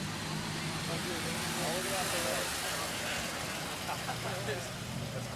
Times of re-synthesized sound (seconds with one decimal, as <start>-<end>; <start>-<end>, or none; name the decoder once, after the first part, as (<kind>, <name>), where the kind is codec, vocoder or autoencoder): none

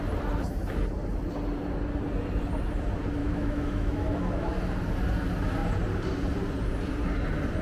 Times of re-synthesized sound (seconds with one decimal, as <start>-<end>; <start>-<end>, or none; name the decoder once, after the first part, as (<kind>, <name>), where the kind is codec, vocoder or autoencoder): 3.2-4.5 (autoencoder, DAC-VAE)

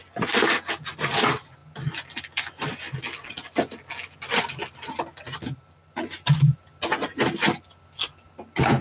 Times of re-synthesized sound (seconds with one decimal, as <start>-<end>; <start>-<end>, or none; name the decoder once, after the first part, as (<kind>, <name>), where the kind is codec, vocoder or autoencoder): none

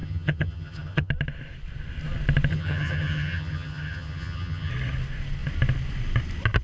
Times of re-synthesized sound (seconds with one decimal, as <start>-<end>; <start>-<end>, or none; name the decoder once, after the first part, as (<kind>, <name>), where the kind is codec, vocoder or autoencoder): 0.0-1.1 (vocoder, HiFi-GAN); 2.5-4.7

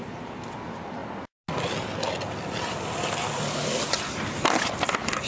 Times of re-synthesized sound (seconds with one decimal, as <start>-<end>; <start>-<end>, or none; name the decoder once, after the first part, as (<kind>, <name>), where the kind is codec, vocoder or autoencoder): none

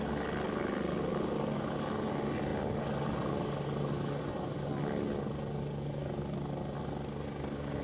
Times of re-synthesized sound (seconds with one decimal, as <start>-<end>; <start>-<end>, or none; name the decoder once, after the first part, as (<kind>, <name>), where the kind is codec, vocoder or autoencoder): none

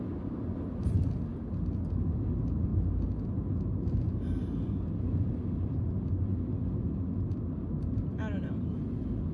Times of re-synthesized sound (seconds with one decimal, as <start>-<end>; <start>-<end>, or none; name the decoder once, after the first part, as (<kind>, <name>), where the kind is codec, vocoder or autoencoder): none